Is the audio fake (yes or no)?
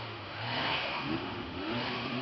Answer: yes